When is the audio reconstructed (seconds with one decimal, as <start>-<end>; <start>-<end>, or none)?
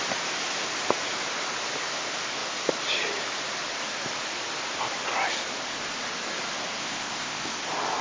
6.8-7.6